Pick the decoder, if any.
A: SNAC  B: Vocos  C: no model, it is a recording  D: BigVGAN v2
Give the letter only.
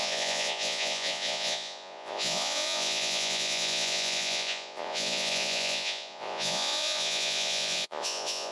B